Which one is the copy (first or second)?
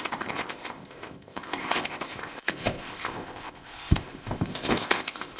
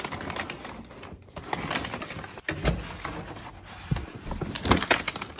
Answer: first